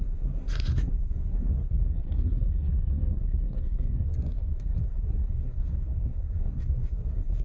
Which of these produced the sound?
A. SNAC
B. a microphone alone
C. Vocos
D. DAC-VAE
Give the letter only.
A